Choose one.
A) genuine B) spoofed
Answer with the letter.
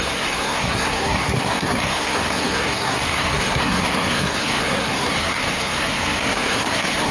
B